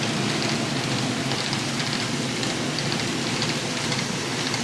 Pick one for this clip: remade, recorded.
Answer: remade